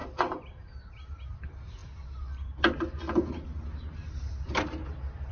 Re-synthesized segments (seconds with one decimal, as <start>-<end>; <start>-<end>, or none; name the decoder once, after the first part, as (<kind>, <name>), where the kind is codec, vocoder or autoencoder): none